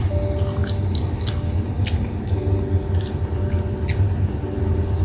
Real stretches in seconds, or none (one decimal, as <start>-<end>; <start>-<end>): 0.0-5.0